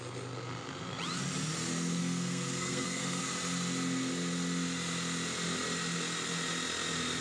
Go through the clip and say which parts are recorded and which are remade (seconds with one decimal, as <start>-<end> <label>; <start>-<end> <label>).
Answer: 0.0-2.0 recorded; 2.0-3.2 remade; 3.2-7.2 recorded